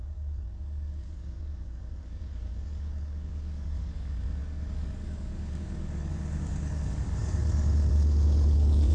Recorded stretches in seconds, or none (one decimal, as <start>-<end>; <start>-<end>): none